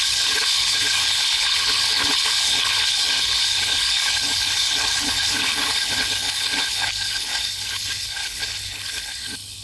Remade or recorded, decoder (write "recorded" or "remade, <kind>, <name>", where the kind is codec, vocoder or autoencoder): remade, codec, HILCodec